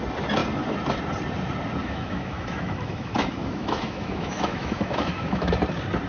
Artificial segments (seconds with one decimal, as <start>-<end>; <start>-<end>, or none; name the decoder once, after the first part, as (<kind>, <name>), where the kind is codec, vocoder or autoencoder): 1.8-5.5 (autoencoder, DAC-VAE)